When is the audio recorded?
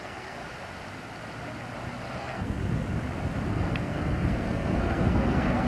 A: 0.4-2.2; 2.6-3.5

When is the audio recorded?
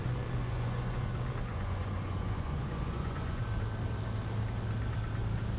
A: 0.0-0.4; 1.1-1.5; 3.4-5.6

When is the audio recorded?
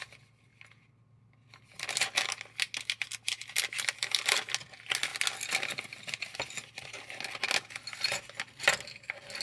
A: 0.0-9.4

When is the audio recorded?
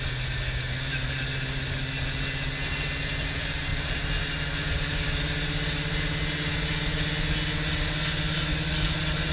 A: 0.0-9.3